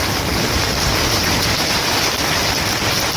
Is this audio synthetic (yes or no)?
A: no